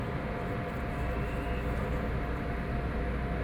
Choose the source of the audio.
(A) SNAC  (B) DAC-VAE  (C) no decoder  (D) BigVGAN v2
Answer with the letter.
C